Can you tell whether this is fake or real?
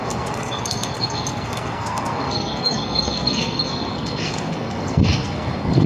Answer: fake